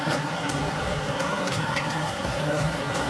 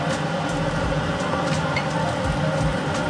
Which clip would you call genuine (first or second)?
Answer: second